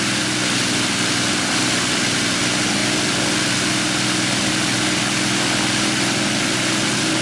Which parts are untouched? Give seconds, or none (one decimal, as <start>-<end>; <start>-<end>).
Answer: 0.0-7.2